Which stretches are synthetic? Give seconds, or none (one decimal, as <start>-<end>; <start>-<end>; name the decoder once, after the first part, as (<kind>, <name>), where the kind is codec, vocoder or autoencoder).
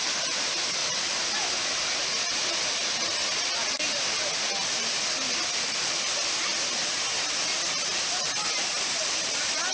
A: none